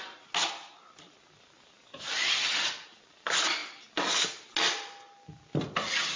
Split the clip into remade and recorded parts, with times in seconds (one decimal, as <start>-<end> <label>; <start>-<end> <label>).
0.0-6.2 recorded